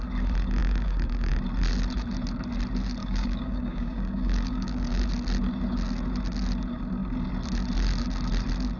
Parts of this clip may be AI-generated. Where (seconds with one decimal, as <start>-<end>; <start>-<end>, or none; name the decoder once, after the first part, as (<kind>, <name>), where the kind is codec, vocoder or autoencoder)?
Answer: 0.6-1.3 (codec, DAC); 3.0-5.0